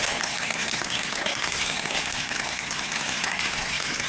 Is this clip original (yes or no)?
no